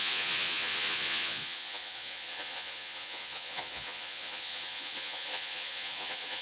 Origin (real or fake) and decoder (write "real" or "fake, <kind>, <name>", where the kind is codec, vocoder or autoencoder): fake, vocoder, Vocos